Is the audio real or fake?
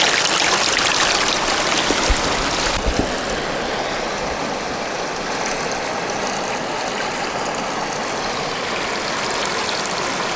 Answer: real